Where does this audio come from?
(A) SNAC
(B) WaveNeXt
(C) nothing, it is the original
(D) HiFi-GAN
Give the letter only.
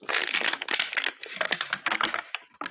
C